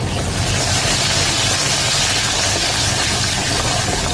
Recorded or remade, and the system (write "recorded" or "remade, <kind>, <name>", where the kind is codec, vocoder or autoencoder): recorded